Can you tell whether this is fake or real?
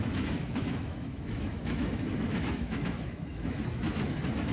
fake